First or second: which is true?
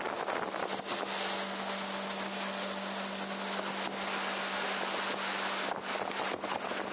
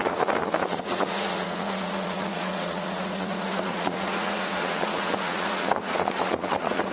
first